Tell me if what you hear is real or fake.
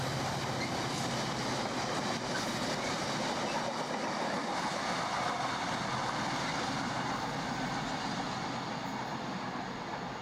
real